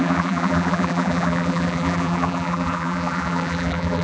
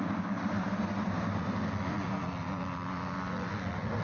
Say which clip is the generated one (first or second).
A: first